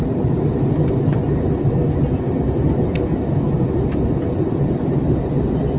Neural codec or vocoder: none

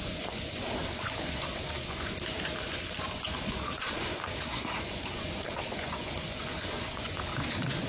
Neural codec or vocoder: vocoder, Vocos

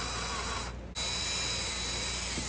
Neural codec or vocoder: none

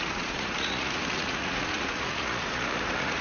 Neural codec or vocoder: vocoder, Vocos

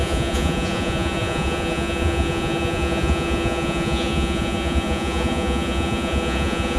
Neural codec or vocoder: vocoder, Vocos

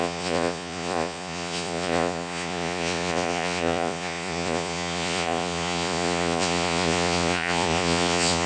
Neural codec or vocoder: vocoder, Vocos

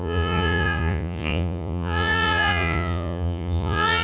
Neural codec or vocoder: vocoder, Vocos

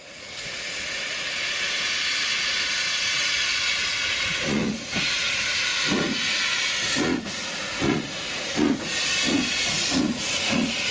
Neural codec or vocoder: vocoder, Vocos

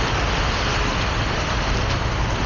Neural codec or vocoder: none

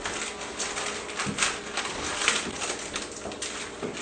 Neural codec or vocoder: none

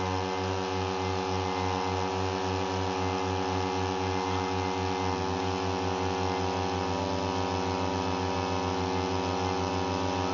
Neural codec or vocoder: none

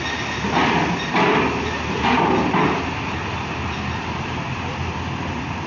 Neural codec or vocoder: none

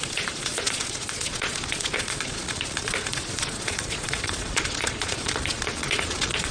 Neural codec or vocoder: vocoder, Vocos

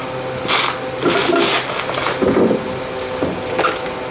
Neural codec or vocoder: none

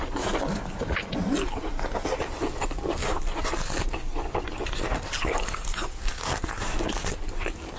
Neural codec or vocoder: none